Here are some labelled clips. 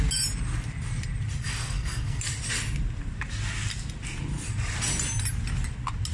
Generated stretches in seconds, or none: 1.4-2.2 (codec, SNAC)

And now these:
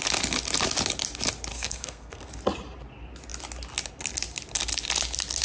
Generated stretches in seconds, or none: 1.5-2.3 (codec, SNAC)